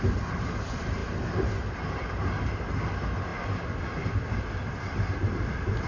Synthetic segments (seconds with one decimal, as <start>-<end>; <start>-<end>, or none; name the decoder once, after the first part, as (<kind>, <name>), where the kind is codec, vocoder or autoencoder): none